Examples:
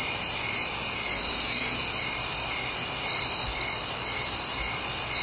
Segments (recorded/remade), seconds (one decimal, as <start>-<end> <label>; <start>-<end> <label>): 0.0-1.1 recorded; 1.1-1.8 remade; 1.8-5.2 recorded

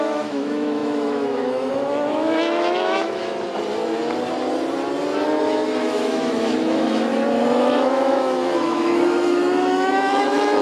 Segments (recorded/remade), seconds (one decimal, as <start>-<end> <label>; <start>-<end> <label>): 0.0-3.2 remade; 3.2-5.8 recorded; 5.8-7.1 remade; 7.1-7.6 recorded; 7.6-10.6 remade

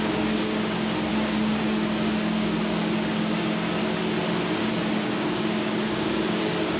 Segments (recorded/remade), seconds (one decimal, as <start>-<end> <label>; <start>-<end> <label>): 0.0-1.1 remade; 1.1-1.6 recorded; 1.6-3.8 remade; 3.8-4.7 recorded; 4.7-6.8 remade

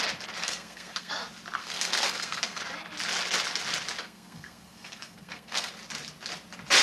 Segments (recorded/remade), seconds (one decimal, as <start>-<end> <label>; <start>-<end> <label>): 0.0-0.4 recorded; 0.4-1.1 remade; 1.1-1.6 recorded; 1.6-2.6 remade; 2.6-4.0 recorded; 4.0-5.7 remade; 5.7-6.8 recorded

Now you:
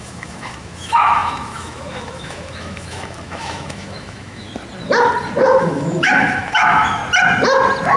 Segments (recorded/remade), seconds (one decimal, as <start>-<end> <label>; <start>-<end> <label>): 0.0-4.5 remade; 4.5-5.6 recorded; 5.6-7.0 remade; 7.0-8.0 recorded

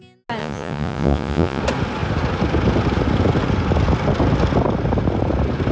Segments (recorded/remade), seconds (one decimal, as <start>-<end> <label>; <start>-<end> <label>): 0.0-0.4 recorded; 0.4-1.6 remade; 1.6-5.7 recorded

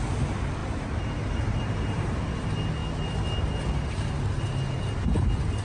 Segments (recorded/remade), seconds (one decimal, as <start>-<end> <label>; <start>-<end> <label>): 0.0-0.6 recorded; 0.6-2.2 remade; 2.2-5.6 recorded